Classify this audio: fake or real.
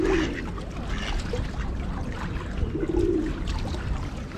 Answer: real